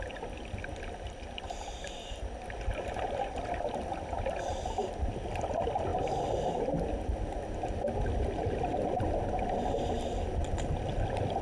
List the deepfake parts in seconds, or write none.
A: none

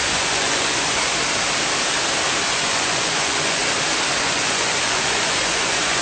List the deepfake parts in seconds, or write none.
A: 0.0-1.1 (vocoder, Vocos); 2.4-3.6; 4.2-6.0

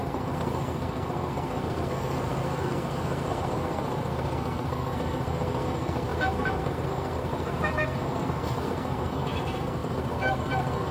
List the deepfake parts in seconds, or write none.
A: 0.0-10.9 (codec, SNAC)

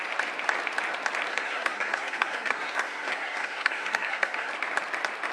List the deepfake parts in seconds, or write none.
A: 1.3-4.5 (codec, SNAC)

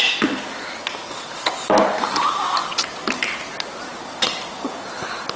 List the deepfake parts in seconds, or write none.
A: none